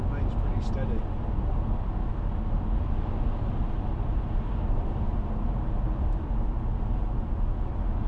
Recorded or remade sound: recorded